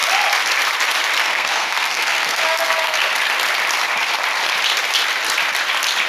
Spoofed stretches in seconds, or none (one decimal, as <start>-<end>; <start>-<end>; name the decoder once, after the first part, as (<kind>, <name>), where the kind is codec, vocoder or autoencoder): 1.2-3.0 (codec, SNAC)